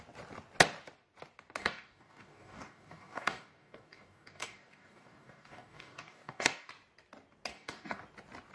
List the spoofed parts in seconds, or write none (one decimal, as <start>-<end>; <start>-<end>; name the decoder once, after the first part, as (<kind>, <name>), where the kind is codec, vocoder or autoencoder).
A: 1.6-6.7 (codec, DAC); 7.5-8.0